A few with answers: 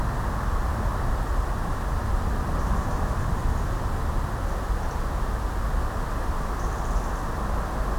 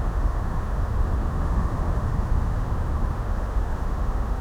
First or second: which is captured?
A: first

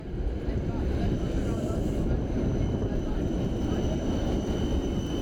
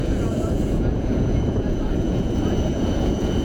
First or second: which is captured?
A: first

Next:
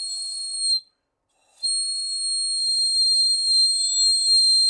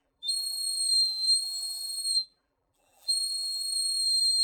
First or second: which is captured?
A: first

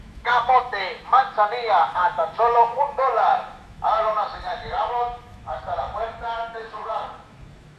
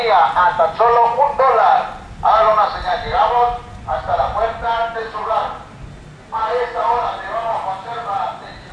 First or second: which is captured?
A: second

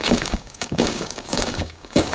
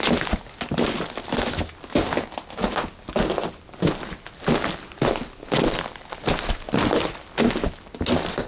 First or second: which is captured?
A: second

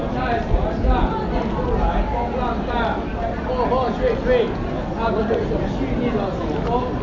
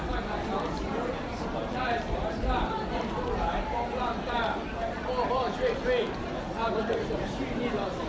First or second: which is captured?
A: first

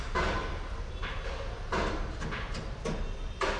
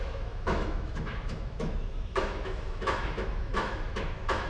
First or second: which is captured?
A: first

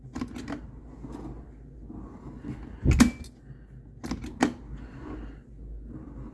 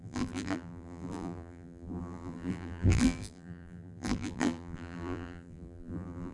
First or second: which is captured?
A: first